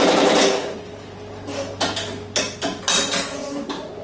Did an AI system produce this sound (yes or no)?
no